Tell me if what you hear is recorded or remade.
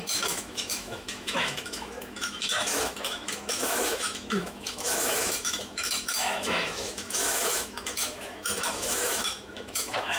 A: remade